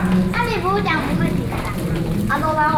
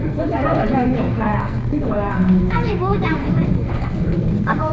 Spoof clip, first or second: second